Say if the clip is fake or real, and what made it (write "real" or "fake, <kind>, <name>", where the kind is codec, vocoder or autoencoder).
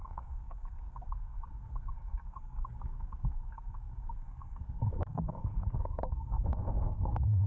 fake, codec, SNAC